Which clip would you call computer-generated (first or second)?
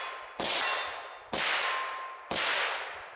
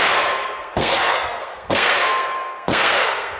second